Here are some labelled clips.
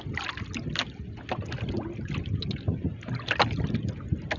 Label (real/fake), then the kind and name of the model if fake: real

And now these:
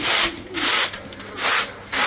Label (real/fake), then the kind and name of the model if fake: real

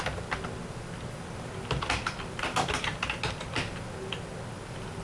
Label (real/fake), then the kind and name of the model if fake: real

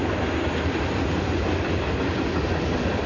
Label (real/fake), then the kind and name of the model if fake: real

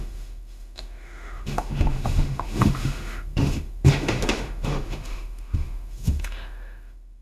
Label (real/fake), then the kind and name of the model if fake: fake, autoencoder, DAC-VAE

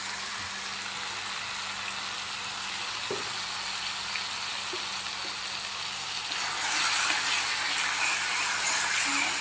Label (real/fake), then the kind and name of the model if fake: real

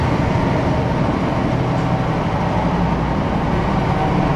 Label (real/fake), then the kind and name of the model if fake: real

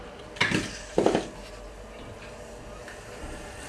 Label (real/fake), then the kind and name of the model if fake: real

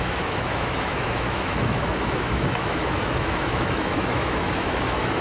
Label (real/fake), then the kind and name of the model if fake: fake, autoencoder, DAC-VAE